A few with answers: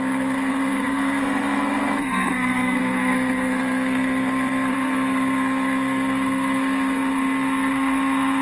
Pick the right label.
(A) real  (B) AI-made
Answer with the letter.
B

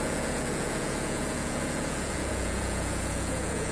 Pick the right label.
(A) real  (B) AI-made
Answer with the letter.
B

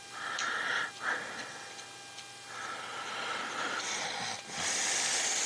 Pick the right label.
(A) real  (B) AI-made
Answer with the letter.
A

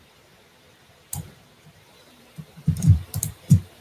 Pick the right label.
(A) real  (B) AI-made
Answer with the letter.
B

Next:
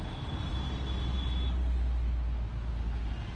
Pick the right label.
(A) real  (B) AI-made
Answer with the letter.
A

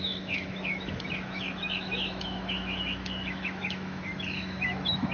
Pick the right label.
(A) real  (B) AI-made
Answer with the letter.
B